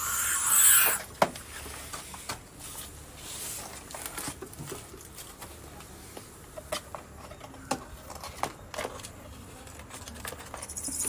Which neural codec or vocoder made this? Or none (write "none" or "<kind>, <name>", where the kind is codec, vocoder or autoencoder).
none